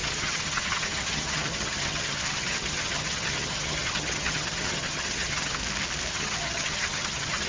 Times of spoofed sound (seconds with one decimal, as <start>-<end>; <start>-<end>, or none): 0.0-5.6; 6.1-7.5